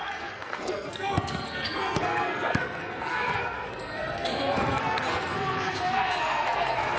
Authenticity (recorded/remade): remade